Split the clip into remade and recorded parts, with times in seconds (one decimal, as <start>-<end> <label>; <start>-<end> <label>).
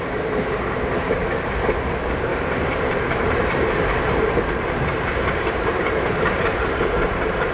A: 0.0-2.3 recorded; 2.3-6.8 remade; 6.8-7.5 recorded